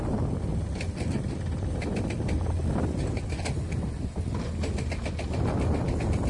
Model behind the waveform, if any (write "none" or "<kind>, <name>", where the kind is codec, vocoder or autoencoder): none